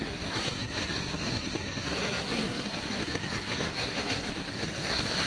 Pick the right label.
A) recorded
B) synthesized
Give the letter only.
B